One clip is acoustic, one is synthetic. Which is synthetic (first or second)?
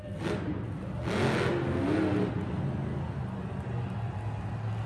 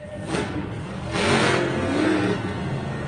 second